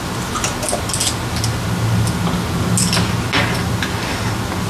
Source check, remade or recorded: recorded